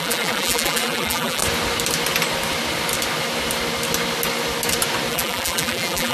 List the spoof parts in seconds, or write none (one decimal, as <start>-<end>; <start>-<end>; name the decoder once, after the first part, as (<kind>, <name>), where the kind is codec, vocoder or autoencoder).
0.0-1.4 (vocoder, BigVGAN v2); 5.1-6.1